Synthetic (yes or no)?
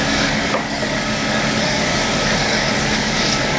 yes